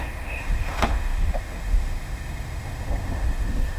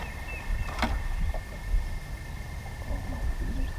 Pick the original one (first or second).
second